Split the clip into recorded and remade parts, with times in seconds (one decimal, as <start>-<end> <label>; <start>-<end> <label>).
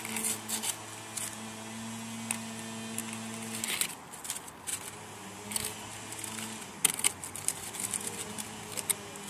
0.0-9.3 recorded